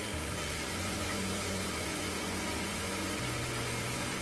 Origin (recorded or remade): remade